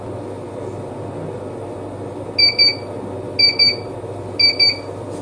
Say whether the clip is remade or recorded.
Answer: recorded